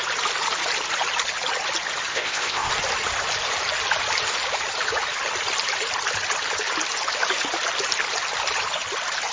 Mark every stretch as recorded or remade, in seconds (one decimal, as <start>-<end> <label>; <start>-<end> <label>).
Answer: 0.0-2.1 recorded; 2.1-2.7 remade; 2.7-9.3 recorded